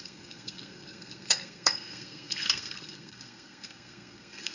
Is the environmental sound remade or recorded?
remade